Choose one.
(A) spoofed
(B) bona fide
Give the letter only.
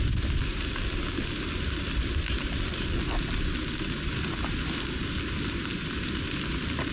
B